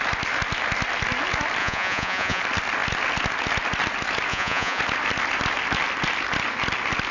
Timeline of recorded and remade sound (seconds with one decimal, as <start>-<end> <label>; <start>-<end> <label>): 0.0-1.6 recorded; 1.6-2.4 remade; 2.4-4.3 recorded; 4.3-4.8 remade; 4.8-7.1 recorded